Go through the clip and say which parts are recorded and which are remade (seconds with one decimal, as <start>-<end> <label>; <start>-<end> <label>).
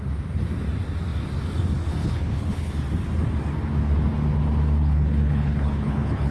0.0-2.0 recorded; 2.0-2.7 remade; 2.7-4.8 recorded; 4.8-6.3 remade